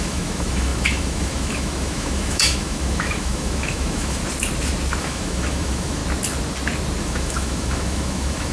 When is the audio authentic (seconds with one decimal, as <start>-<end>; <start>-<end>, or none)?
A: 4.2-5.0; 6.0-7.0